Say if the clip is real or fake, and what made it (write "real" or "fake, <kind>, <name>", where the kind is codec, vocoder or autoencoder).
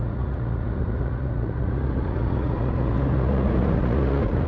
fake, vocoder, Vocos